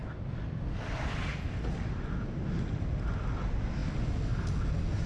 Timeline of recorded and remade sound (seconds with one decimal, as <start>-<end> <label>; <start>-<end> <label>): 0.0-3.1 remade; 3.1-5.1 recorded